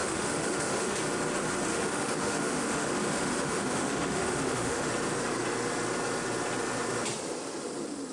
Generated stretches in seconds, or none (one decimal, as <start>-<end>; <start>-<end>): 0.0-1.0; 1.7-4.9